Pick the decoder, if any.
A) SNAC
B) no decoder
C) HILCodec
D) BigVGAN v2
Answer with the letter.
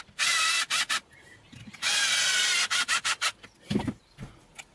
B